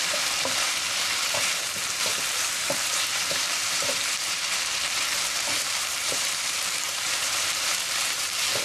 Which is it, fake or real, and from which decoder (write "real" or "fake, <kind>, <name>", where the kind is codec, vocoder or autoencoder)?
fake, vocoder, BigVGAN v2